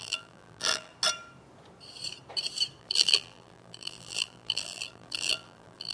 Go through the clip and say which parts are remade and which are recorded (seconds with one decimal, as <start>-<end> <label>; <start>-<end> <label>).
0.0-0.9 remade; 0.9-2.8 recorded; 2.8-5.9 remade